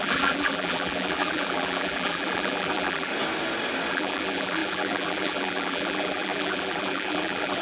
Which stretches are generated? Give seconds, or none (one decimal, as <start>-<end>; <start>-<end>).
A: 0.0-3.1; 3.9-7.6